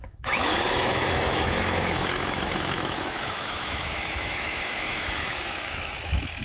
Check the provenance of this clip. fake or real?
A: fake